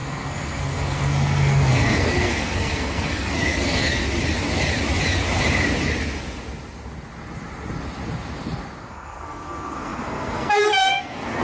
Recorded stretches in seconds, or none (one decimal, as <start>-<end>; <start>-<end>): 4.0-8.8